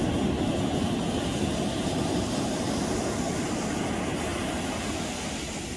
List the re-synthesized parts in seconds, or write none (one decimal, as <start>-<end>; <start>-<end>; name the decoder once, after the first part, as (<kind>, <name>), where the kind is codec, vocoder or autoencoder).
none